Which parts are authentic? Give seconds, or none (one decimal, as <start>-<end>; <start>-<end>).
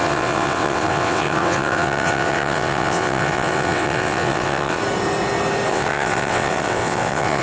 4.8-5.7